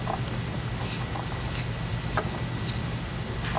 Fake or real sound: real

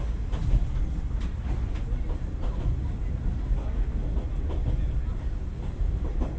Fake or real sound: real